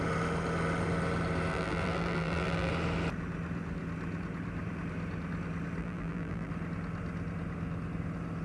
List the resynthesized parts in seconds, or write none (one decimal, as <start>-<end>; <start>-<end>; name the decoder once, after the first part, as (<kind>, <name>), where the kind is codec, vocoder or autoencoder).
1.5-2.7 (vocoder, BigVGAN v2); 5.8-6.5